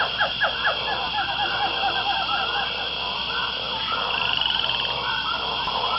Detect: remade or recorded recorded